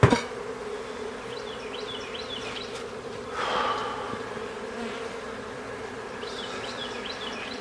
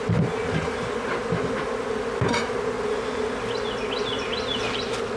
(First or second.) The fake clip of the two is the first